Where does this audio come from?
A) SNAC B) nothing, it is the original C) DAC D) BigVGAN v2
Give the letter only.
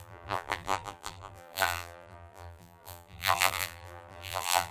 D